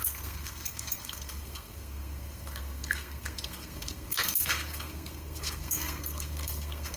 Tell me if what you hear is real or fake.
fake